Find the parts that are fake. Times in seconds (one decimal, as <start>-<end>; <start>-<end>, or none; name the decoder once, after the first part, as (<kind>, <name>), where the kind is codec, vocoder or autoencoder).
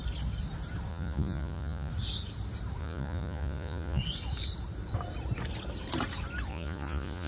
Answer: 0.9-1.9 (vocoder, Vocos); 2.8-4.0; 6.5-7.3